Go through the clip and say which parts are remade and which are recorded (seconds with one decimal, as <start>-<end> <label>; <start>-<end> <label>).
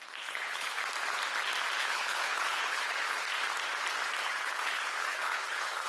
0.0-0.8 remade; 0.8-1.8 recorded; 1.8-3.3 remade; 3.3-4.2 recorded; 4.2-5.9 remade